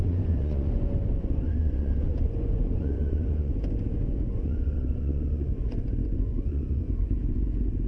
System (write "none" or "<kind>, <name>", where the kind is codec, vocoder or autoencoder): vocoder, Vocos